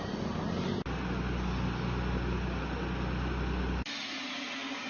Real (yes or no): yes